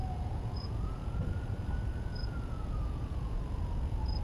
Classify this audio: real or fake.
fake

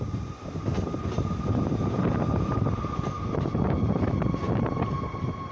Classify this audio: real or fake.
fake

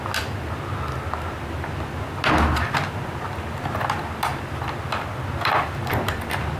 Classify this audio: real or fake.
real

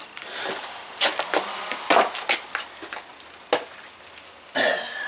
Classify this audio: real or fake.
real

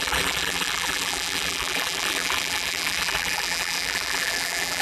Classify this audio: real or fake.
fake